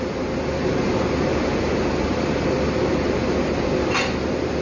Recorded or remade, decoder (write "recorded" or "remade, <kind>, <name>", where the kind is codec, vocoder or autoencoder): recorded